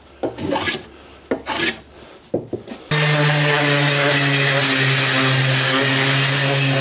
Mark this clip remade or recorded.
recorded